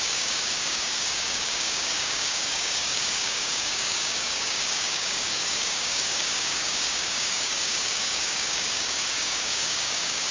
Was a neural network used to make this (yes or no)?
yes